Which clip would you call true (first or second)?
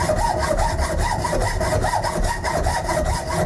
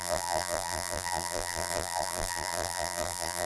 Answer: first